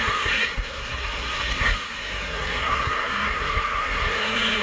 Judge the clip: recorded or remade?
remade